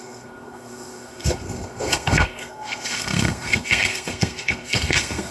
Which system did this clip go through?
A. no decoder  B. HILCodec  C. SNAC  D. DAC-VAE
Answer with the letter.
C